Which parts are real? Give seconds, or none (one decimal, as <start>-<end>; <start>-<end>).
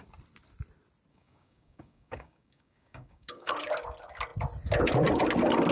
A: 0.0-1.1; 3.5-5.7